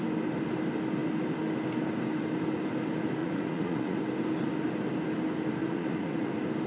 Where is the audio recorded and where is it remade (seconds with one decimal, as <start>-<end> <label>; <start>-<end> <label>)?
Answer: 0.0-3.2 recorded; 3.2-4.0 remade; 4.0-5.6 recorded; 5.6-6.3 remade; 6.3-6.7 recorded

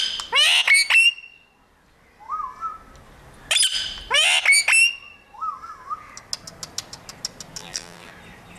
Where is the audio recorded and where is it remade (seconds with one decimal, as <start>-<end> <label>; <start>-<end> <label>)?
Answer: 0.0-7.6 recorded; 7.6-8.1 remade; 8.1-8.6 recorded

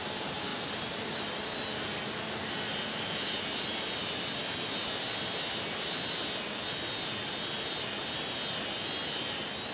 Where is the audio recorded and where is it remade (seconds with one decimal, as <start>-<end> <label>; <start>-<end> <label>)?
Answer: 0.0-9.7 recorded

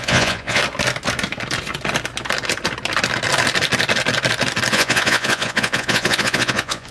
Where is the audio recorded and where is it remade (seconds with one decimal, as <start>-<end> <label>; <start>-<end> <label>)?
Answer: 0.0-0.6 remade; 0.6-4.7 recorded; 4.7-6.9 remade